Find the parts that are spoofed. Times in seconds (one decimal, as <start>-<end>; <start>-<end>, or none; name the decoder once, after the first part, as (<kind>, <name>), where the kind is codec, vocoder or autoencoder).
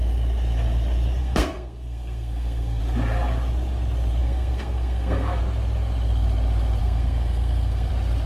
1.2-2.8 (codec, SNAC); 4.2-5.4; 6.8-7.9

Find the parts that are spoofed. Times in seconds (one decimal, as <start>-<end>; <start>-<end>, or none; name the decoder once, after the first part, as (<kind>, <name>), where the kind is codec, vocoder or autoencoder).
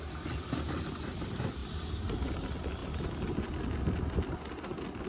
none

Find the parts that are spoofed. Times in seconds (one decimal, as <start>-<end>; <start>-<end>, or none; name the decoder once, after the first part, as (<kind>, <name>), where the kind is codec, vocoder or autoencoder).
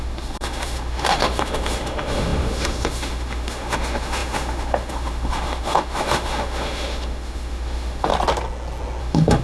0.0-8.1 (autoencoder, DAC-VAE); 9.0-9.4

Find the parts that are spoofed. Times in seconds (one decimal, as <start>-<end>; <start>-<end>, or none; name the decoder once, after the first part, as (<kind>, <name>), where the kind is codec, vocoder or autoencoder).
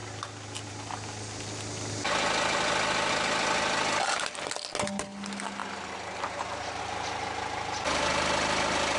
none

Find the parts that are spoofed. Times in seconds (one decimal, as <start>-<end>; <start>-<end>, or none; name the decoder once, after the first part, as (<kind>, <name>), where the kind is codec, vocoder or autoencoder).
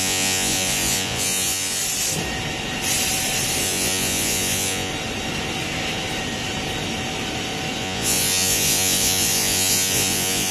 0.0-1.8 (vocoder, Vocos); 3.6-4.9; 7.8-10.5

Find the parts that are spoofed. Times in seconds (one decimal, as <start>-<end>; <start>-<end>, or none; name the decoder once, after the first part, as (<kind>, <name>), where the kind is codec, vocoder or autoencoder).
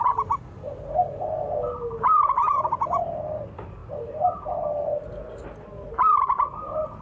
none